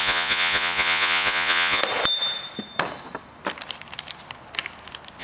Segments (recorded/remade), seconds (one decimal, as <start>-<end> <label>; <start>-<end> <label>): 0.0-1.8 remade; 1.8-5.2 recorded